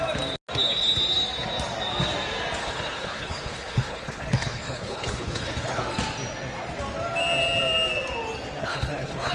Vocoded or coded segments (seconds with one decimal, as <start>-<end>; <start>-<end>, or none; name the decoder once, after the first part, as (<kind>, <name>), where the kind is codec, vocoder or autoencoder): 2.6-5.8 (codec, HILCodec); 8.6-9.3